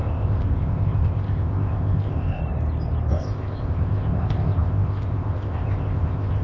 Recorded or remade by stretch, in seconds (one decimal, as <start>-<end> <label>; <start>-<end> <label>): 0.0-2.4 remade; 2.4-3.1 recorded; 3.1-6.4 remade